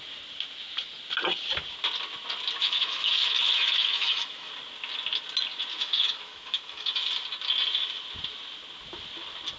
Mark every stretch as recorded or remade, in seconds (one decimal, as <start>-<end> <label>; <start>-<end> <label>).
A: 0.0-2.6 recorded; 2.6-4.5 remade; 4.5-5.7 recorded; 5.7-7.1 remade; 7.1-9.6 recorded